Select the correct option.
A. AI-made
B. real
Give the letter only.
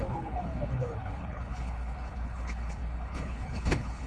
A